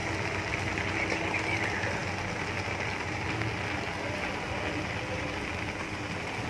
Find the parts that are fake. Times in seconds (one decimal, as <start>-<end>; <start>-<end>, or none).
none

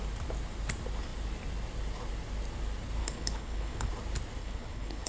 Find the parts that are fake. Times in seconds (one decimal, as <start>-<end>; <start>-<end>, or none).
3.0-3.9; 4.4-5.1

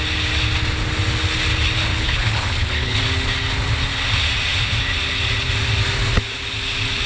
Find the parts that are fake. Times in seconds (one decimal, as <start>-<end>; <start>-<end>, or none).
1.9-3.0

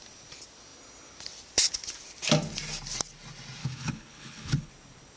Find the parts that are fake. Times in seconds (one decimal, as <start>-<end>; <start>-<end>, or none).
3.6-4.7